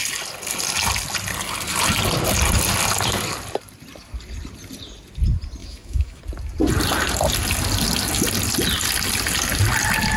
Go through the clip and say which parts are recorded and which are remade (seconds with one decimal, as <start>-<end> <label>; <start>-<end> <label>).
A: 0.0-5.6 recorded; 5.6-6.2 remade; 6.2-10.2 recorded